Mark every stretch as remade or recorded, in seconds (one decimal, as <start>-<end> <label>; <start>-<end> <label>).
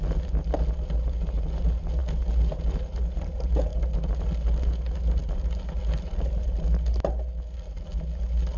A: 0.0-8.6 recorded